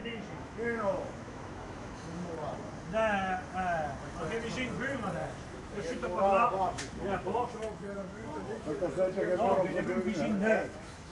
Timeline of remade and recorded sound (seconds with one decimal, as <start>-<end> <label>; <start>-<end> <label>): 0.0-2.3 remade; 2.3-5.2 recorded; 5.2-9.8 remade; 9.8-10.4 recorded; 10.4-11.1 remade